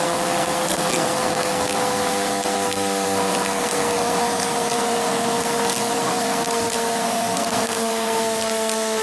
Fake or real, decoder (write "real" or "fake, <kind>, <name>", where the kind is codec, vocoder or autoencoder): fake, codec, SNAC